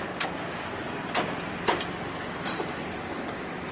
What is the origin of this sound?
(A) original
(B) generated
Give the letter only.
A